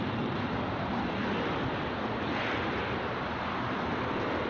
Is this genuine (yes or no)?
yes